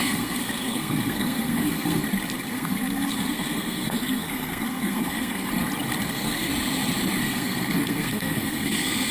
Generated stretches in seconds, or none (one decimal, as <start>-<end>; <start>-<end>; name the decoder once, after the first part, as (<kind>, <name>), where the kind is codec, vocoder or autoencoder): 0.0-2.0 (codec, SNAC); 2.5-5.5; 6.1-6.5; 7.2-9.1